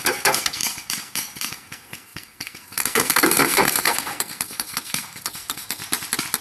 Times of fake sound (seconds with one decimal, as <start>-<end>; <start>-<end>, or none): 0.0-5.8